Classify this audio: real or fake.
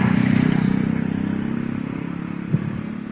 real